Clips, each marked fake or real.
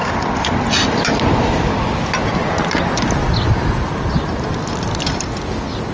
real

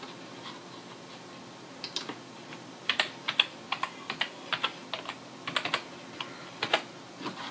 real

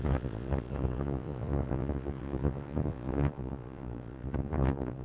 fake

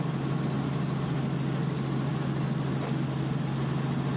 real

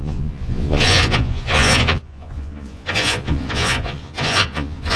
fake